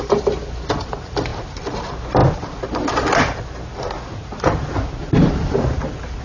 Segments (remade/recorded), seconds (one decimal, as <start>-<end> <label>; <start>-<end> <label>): 0.0-6.2 recorded